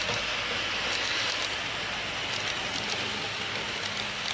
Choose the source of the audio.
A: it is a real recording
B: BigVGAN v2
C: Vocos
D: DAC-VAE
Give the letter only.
A